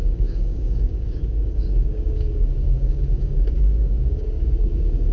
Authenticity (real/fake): fake